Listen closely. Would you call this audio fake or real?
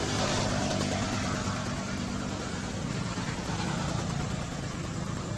real